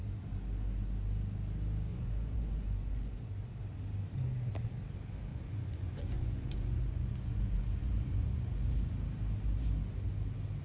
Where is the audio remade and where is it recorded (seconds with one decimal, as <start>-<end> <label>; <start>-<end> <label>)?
0.0-1.9 recorded; 1.9-3.3 remade; 3.3-5.3 recorded; 5.3-8.9 remade; 8.9-10.6 recorded